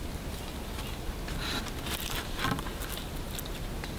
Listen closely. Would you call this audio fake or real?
real